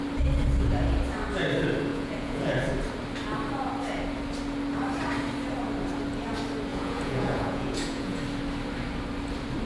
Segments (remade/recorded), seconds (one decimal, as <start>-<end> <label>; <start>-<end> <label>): 0.0-1.9 recorded; 1.9-2.7 remade; 2.7-6.7 recorded; 6.7-8.2 remade; 8.2-9.7 recorded